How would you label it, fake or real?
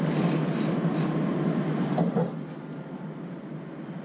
real